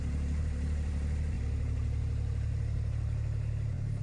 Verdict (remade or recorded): remade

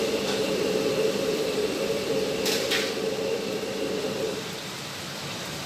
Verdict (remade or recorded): remade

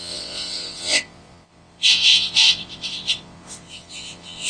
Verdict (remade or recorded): remade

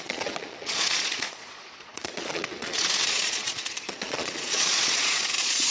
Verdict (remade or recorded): remade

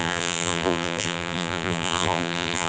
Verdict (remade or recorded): remade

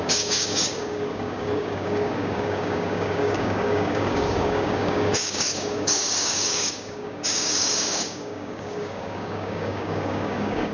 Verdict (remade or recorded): remade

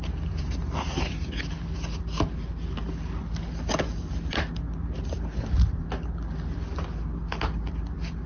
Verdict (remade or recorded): recorded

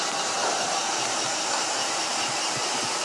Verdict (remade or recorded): remade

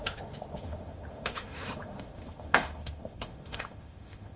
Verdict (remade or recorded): remade